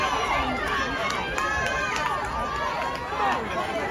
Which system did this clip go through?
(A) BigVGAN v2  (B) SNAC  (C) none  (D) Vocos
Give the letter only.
C